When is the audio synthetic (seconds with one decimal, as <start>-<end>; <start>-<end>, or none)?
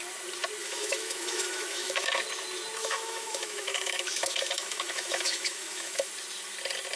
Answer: 0.6-2.2; 2.8-6.1